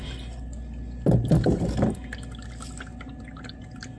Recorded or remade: recorded